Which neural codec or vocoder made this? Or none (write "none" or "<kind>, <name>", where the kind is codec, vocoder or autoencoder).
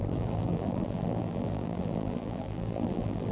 vocoder, BigVGAN v2